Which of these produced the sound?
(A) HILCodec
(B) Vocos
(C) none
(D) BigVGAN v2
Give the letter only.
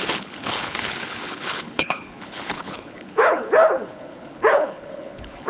A